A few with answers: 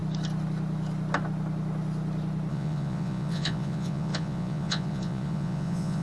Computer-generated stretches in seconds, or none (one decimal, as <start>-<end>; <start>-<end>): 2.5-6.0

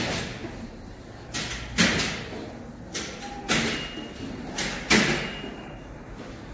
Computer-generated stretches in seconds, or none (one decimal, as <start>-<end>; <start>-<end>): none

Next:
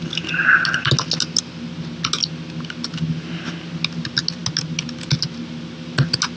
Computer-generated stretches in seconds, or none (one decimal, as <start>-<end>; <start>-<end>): none

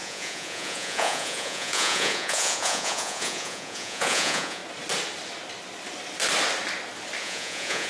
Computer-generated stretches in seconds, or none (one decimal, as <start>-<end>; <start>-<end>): 0.0-4.6; 7.2-7.9